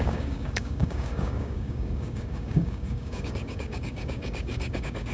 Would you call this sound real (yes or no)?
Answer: no